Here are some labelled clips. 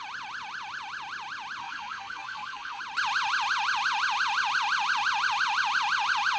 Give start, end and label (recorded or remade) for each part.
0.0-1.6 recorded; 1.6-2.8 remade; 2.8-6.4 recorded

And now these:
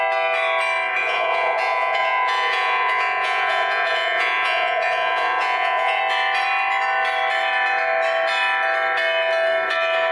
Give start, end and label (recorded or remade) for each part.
0.0-1.0 recorded; 1.0-6.0 remade; 6.0-10.1 recorded

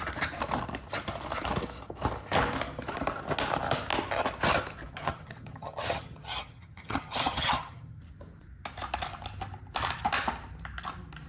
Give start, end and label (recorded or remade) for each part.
0.0-5.0 recorded; 5.0-8.0 remade; 8.0-11.3 recorded

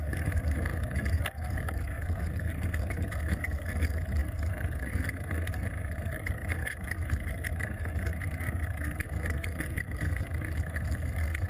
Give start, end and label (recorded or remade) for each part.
0.0-11.5 remade

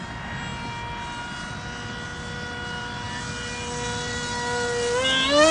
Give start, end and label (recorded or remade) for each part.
0.0-5.5 recorded

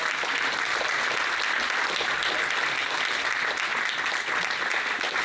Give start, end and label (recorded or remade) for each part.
0.0-5.2 recorded

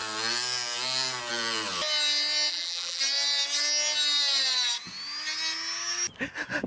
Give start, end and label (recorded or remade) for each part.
0.0-2.5 recorded; 2.5-3.0 remade; 3.0-6.7 recorded